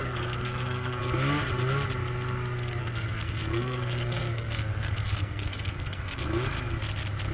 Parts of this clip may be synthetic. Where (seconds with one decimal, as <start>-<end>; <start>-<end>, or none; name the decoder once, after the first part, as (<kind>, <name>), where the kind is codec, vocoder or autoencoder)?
0.0-1.0 (codec, SNAC); 2.8-6.2